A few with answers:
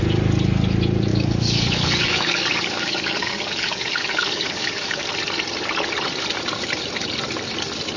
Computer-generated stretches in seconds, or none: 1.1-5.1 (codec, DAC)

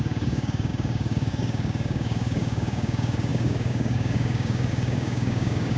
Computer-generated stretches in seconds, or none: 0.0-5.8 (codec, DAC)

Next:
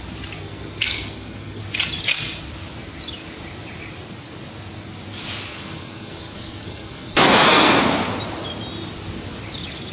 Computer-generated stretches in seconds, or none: 0.4-1.6 (codec, SNAC); 5.5-7.8

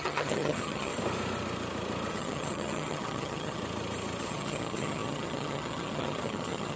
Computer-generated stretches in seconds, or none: 0.0-0.9 (vocoder, HiFi-GAN); 2.1-3.6; 4.2-6.8

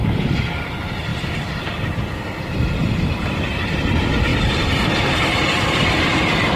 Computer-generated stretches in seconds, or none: none

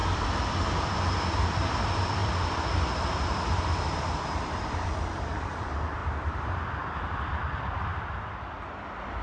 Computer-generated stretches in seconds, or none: 0.0-7.9 (vocoder, BigVGAN v2); 8.5-9.2

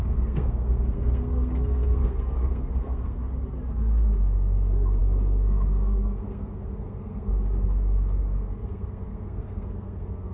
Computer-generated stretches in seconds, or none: 0.0-3.2 (codec, SNAC); 3.7-10.3

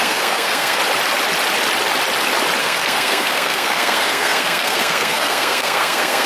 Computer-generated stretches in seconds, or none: 0.0-0.8 (codec, SNAC); 2.6-6.3